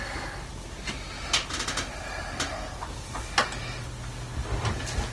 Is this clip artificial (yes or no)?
no